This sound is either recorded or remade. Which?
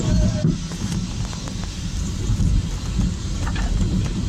recorded